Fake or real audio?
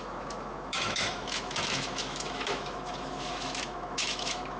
fake